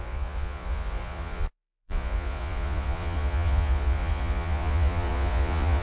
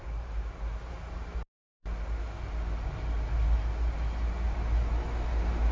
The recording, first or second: second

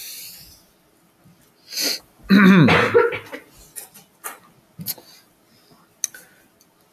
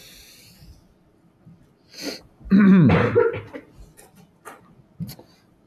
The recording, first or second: first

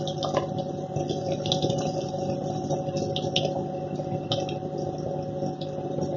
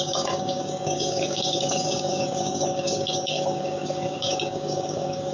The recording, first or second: first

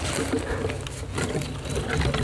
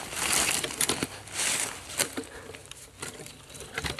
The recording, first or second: first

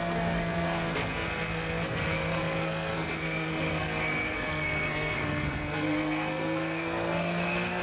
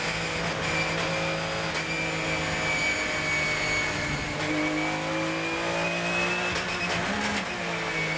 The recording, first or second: second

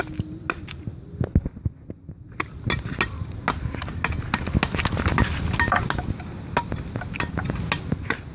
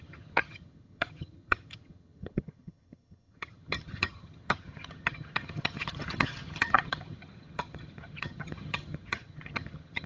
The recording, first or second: first